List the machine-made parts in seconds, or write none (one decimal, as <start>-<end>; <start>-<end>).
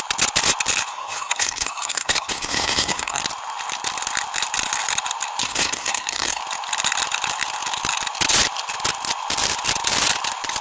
0.9-3.2; 5.4-6.4